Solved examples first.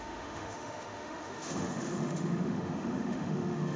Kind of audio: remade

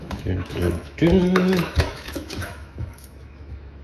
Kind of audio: remade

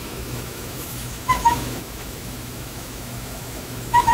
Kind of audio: remade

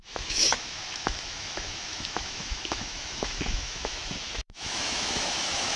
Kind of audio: remade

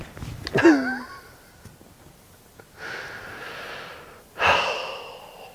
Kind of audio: recorded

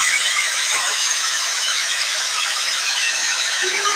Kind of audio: remade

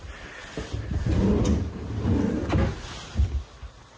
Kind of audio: recorded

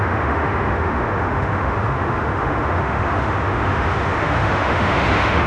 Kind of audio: remade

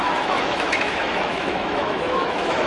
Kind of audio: remade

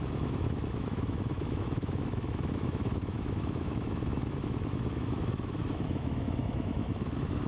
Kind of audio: remade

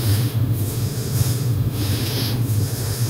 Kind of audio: remade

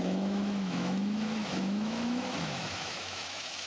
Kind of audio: remade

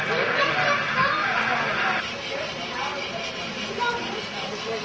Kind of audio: recorded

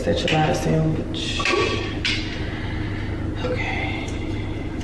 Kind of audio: recorded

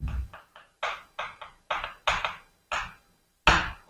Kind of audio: recorded